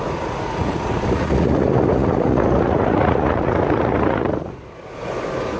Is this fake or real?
fake